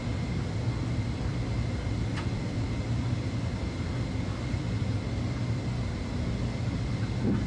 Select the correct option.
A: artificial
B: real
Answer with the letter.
B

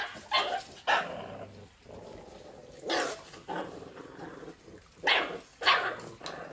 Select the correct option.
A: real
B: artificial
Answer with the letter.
A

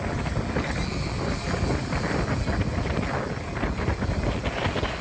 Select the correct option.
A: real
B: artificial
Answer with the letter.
A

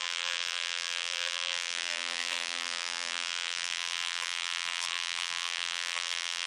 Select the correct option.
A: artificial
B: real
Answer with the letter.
A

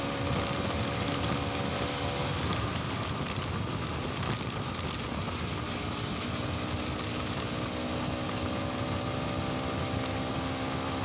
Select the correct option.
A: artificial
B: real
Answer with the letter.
B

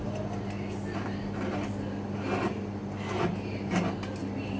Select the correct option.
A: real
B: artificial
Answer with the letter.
A